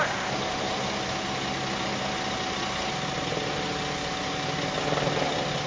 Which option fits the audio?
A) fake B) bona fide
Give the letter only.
B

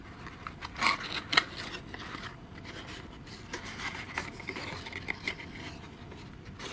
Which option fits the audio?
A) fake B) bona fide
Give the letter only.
B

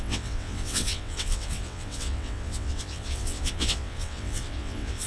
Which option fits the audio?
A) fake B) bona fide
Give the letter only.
A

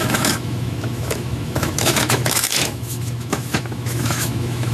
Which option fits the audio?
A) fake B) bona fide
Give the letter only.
A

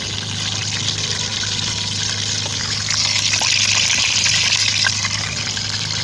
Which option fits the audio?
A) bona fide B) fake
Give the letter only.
A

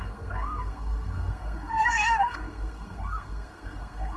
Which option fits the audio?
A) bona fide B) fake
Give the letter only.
B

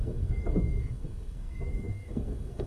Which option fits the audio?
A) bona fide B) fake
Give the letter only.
B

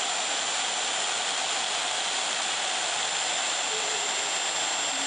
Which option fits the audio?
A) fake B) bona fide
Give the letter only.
B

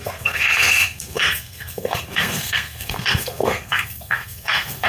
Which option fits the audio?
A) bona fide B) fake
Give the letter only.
B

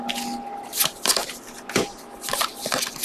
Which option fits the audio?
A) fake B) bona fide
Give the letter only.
B